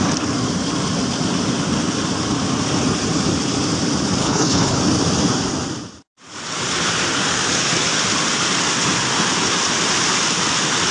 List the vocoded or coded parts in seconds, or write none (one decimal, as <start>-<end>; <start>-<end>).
4.2-4.8